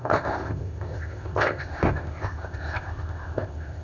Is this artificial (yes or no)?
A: yes